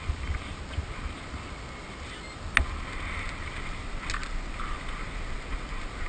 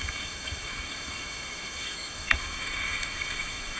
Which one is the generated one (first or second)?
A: second